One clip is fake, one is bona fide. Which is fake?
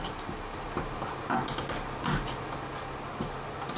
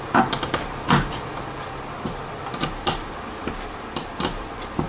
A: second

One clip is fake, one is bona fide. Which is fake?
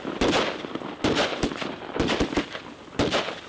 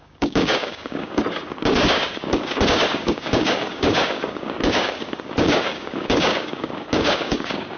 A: second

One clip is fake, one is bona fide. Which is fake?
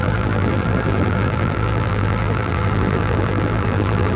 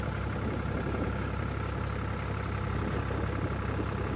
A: first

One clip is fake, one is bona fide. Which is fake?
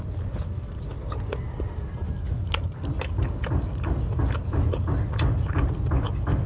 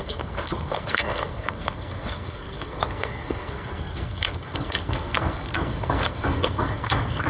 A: second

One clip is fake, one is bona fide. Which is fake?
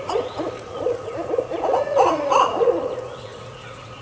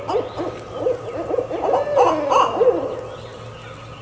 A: first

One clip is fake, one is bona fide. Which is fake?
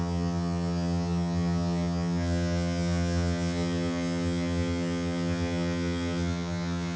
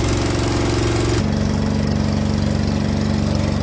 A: first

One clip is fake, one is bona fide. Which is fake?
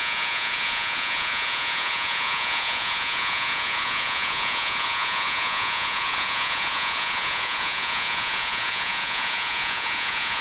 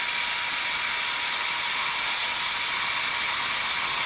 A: first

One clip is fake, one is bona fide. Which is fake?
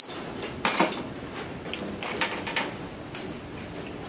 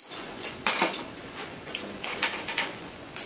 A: second